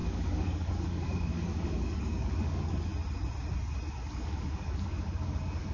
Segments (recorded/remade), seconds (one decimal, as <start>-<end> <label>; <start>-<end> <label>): 0.0-2.9 remade; 2.9-4.1 recorded; 4.1-5.7 remade